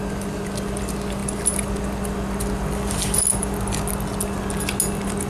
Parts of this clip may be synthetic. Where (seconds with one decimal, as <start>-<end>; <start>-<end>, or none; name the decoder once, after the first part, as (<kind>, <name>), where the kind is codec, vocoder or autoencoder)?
none